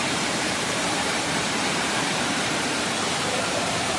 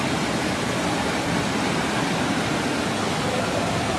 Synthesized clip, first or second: first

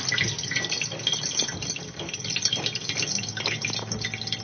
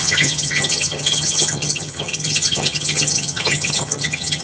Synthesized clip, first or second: second